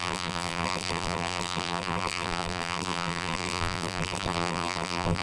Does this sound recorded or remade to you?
remade